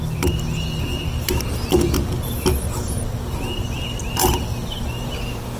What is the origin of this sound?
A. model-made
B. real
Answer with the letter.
B